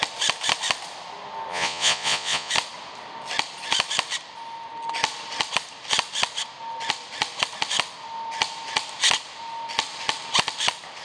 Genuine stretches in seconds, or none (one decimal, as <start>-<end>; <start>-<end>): 0.0-1.5; 2.5-11.0